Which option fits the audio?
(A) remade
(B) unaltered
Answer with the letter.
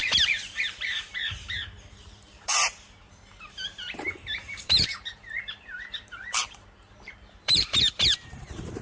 A